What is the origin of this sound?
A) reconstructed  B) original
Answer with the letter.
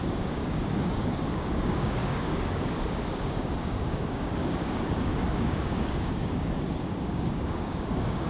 A